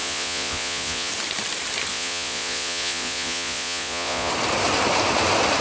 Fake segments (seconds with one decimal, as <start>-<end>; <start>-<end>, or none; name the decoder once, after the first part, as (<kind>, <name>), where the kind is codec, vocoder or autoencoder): 0.0-1.1 (vocoder, Vocos); 1.9-4.3